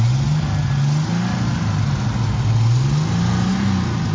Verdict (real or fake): real